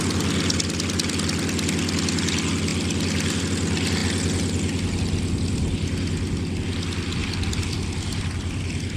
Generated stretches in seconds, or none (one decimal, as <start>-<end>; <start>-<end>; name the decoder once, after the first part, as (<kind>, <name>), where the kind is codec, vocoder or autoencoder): none